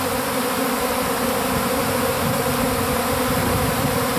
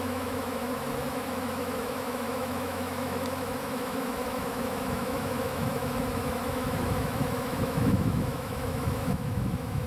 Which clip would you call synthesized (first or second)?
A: second